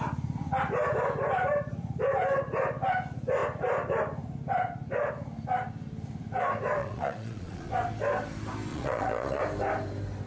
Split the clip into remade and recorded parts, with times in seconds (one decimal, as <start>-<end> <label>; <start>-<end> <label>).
0.0-6.8 recorded; 6.8-7.7 remade; 7.7-8.7 recorded; 8.7-9.4 remade; 9.4-10.3 recorded